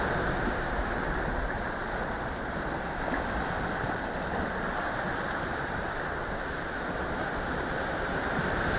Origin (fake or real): real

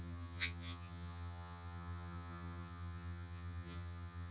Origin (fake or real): fake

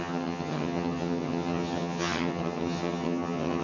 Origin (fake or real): fake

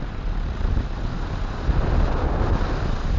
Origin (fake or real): real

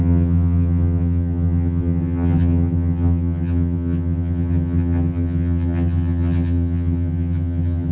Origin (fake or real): fake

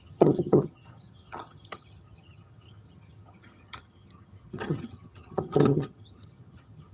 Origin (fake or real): fake